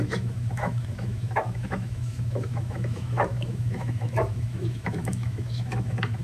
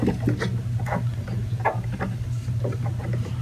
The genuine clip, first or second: second